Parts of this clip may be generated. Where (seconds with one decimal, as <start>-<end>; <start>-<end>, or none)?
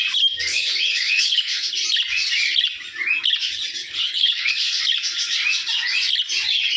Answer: 0.5-1.7; 3.8-4.8